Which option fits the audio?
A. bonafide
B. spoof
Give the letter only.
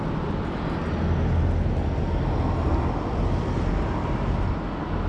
A